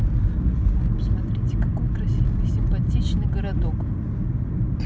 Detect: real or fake real